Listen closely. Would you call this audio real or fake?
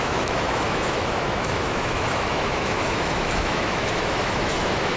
fake